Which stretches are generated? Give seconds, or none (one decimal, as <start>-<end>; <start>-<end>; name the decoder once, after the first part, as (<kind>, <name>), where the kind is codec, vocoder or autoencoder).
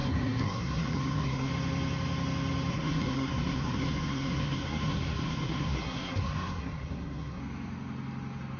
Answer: 0.0-1.5 (codec, SNAC); 2.7-7.4